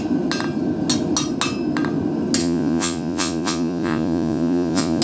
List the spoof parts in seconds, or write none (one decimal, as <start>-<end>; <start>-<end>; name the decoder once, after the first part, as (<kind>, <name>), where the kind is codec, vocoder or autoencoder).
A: 2.4-5.0 (vocoder, Vocos)